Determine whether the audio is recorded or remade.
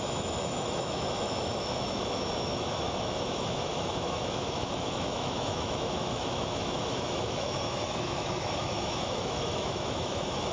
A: remade